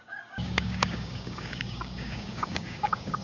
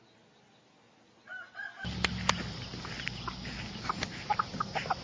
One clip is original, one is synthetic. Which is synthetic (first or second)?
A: first